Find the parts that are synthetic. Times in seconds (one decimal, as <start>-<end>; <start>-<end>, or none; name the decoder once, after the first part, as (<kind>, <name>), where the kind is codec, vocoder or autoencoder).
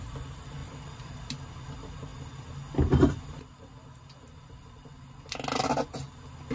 none